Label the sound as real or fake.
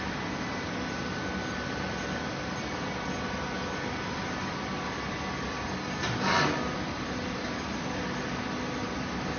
real